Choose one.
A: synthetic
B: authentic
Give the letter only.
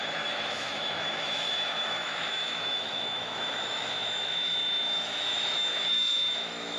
A